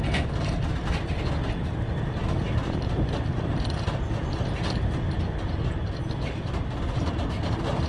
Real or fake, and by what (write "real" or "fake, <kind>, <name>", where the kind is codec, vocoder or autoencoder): real